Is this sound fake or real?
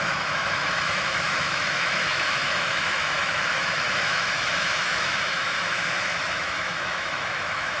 fake